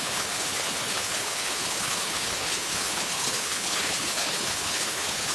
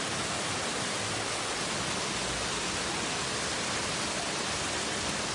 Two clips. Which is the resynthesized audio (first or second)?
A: first